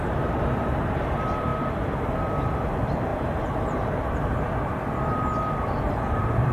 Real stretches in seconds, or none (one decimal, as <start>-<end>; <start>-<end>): 1.5-2.0; 4.7-5.9